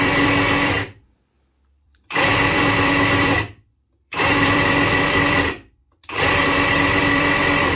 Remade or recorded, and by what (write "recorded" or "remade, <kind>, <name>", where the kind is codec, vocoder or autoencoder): remade, vocoder, BigVGAN v2